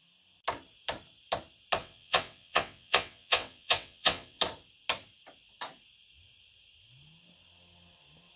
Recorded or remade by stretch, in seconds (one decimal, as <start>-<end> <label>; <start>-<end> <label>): 0.0-1.8 recorded; 1.8-4.4 remade; 4.4-8.4 recorded